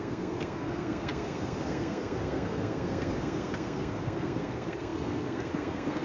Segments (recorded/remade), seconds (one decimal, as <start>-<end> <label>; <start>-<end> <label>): 0.0-6.0 remade